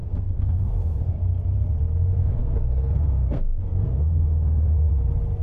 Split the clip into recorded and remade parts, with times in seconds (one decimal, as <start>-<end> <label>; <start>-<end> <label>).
0.0-1.2 remade; 1.2-2.2 recorded; 2.2-4.9 remade; 4.9-5.4 recorded